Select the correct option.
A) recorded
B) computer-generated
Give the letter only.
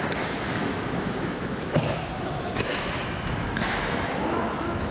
B